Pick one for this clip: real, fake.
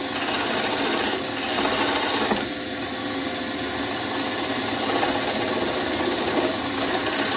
real